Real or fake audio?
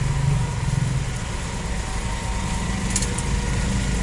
real